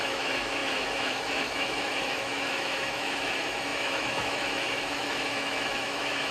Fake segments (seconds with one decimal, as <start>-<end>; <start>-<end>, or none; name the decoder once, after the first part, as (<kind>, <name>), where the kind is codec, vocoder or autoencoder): 0.0-6.3 (autoencoder, DAC-VAE)